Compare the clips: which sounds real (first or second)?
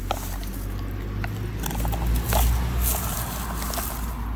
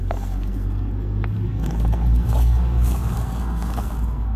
first